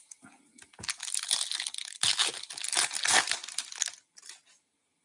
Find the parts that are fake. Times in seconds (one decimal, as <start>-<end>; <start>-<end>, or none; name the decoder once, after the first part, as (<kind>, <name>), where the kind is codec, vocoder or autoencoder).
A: none